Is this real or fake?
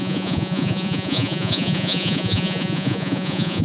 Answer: fake